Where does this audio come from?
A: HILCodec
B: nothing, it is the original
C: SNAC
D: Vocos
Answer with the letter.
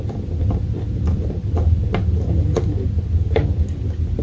B